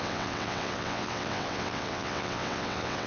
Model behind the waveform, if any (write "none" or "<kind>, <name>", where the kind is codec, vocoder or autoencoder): vocoder, WaveNeXt